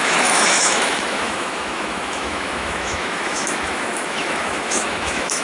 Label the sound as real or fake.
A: fake